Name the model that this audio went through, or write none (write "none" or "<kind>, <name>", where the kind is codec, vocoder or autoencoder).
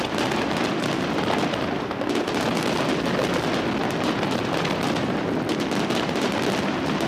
none